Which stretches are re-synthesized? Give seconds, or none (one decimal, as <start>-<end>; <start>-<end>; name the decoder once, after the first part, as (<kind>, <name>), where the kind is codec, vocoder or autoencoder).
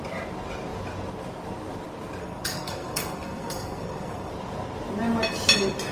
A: 2.2-4.3 (codec, SNAC)